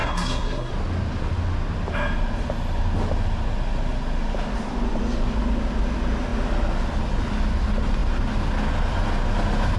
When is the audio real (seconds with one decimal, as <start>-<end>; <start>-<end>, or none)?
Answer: 0.7-9.8